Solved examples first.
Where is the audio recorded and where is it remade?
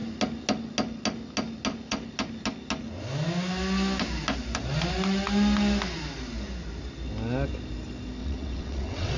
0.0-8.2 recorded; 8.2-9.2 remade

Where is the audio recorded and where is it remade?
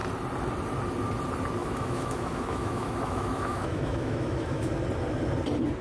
0.0-1.6 recorded; 1.6-4.7 remade; 4.7-5.8 recorded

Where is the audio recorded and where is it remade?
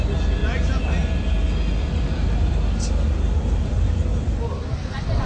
0.0-5.3 recorded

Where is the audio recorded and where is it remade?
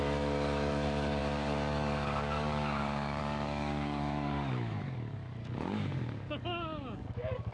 0.0-7.5 remade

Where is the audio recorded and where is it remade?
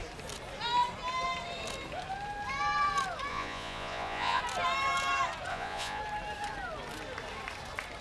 0.0-3.3 recorded; 3.3-4.4 remade; 4.4-5.5 recorded; 5.5-6.0 remade; 6.0-8.0 recorded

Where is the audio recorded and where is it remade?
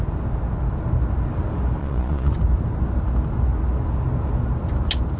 0.0-1.8 recorded; 1.8-2.3 remade; 2.3-5.2 recorded